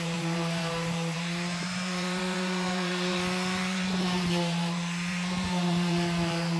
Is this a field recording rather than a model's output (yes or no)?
no